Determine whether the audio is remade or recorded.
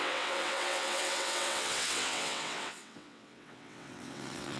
remade